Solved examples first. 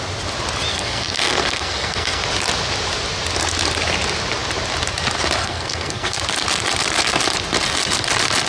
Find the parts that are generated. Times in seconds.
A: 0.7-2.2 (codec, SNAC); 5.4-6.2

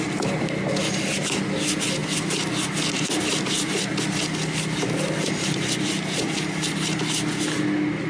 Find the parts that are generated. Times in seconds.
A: none

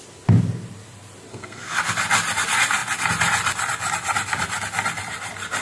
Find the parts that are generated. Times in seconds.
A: 1.3-1.8 (codec, SNAC)